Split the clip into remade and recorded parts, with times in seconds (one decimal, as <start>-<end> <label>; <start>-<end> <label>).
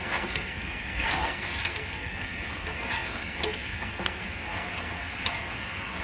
0.0-6.0 remade